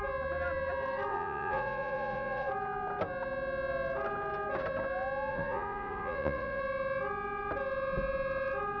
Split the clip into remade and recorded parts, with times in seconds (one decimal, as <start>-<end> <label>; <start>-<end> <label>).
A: 0.0-1.1 recorded; 1.1-2.5 remade; 2.5-5.3 recorded; 5.3-6.6 remade; 6.6-8.8 recorded